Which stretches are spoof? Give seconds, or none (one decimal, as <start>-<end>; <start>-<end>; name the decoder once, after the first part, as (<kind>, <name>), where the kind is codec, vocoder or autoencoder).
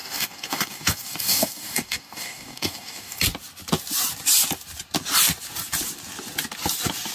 0.0-3.2 (codec, DAC)